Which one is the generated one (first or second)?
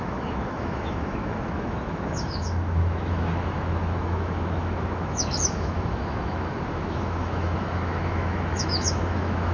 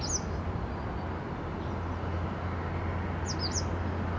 first